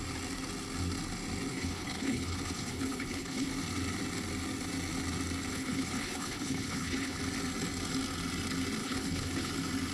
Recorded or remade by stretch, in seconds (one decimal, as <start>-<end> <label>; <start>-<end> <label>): 0.0-1.5 recorded; 1.5-3.5 remade; 3.5-5.5 recorded; 5.5-7.2 remade; 7.2-8.8 recorded; 8.8-9.5 remade; 9.5-9.9 recorded